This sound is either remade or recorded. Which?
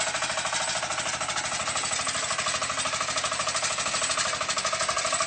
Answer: recorded